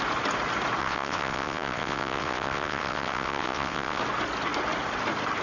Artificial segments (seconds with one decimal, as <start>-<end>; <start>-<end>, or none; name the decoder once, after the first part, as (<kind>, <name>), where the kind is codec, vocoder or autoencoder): 0.8-4.0 (vocoder, WaveNeXt)